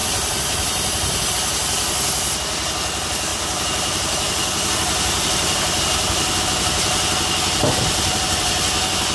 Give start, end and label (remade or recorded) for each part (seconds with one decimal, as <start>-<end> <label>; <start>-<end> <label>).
0.0-1.3 remade; 1.3-3.3 recorded; 3.3-6.4 remade; 6.4-9.1 recorded